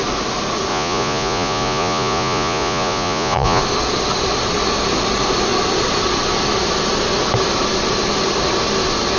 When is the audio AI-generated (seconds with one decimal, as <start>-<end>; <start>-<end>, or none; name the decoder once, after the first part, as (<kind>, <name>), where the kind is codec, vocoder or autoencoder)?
0.7-3.6 (vocoder, Vocos)